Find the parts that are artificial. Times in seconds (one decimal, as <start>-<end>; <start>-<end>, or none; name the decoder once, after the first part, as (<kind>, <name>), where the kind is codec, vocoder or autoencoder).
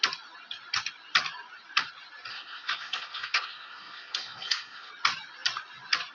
2.3-4.9 (codec, SNAC)